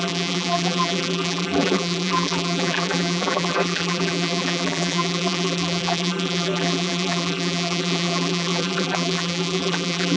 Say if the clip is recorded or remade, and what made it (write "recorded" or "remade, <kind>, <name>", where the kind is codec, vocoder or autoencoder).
remade, vocoder, BigVGAN v2